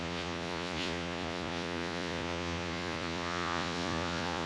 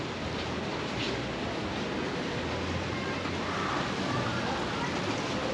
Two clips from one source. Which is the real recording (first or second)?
second